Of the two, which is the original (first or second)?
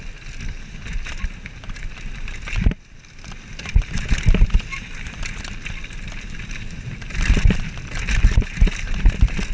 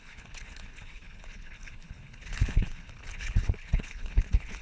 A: first